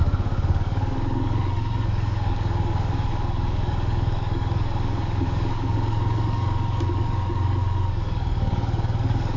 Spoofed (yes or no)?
yes